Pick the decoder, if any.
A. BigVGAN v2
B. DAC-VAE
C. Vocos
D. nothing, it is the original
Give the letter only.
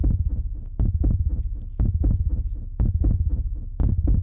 D